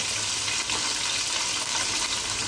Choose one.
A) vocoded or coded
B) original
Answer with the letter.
B